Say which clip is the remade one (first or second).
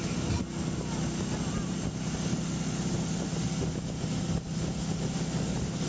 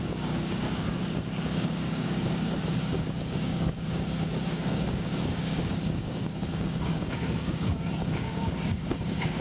second